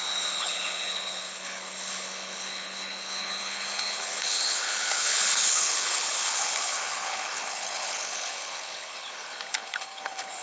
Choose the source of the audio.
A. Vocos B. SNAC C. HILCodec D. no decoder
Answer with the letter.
C